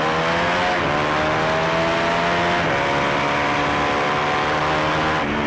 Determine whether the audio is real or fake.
real